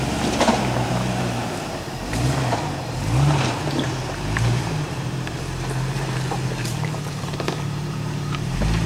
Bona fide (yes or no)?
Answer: no